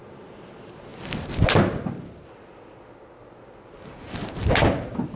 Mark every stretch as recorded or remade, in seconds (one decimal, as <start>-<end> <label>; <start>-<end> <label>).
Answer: 0.0-5.2 recorded

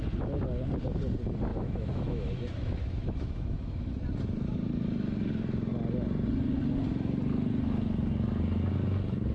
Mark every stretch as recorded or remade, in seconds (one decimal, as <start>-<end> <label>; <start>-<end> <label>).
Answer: 0.0-1.5 recorded; 1.5-3.9 remade; 3.9-9.3 recorded

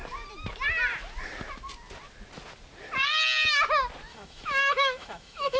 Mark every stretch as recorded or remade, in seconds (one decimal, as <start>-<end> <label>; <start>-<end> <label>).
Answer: 0.0-4.1 recorded; 4.1-5.6 remade

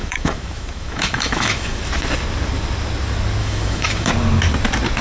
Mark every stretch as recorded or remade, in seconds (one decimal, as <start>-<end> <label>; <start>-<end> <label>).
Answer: 0.0-1.8 remade; 1.8-3.4 recorded; 3.4-4.1 remade; 4.1-5.0 recorded

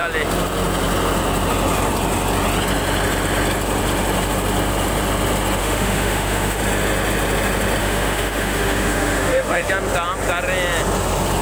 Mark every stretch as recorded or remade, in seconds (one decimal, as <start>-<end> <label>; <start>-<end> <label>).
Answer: 0.0-5.6 recorded; 5.6-6.6 remade; 6.6-7.8 recorded; 7.8-9.7 remade; 9.7-11.4 recorded

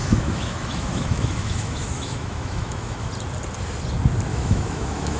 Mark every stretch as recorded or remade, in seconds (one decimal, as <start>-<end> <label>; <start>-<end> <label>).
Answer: 0.0-3.1 remade; 3.1-4.3 recorded; 4.3-5.2 remade

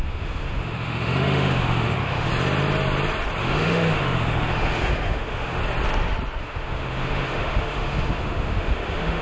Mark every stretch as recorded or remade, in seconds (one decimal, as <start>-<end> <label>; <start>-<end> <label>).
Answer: 0.0-2.3 remade; 2.3-3.4 recorded; 3.4-5.6 remade; 5.6-6.4 recorded; 6.4-9.2 remade